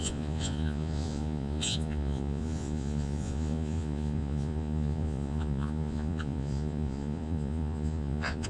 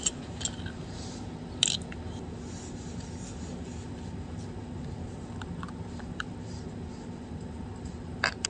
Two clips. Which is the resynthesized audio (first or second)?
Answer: first